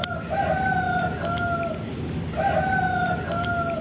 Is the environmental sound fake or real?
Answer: fake